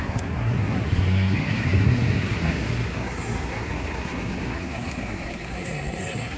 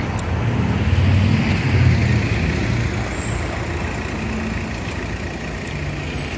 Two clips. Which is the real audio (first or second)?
second